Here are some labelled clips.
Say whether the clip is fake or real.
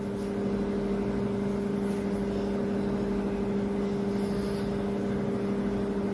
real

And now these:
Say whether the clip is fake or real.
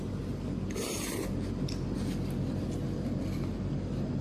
real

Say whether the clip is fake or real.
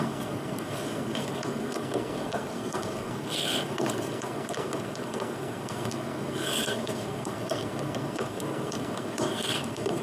fake